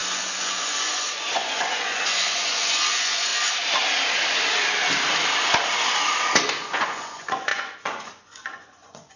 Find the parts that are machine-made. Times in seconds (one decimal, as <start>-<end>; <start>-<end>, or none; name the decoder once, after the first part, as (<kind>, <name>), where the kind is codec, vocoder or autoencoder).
0.0-3.3 (vocoder, Vocos); 6.5-9.2